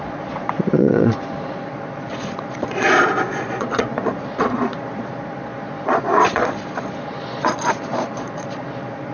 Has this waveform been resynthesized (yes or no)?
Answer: yes